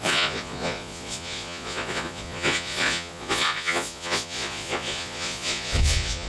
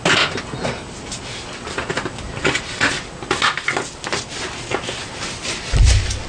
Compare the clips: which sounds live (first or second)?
second